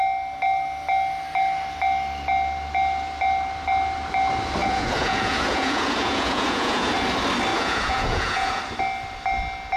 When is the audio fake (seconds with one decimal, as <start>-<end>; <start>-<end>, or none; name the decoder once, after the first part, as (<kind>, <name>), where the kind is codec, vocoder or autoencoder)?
4.6-6.9 (vocoder, Vocos); 7.5-8.6